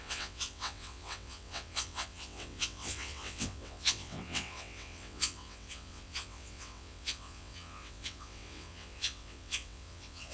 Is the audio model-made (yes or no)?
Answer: yes